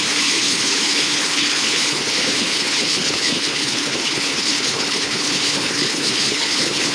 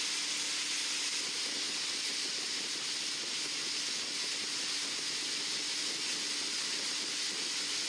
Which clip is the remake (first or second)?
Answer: first